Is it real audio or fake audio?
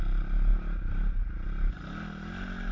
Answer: real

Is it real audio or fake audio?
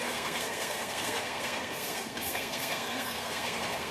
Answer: fake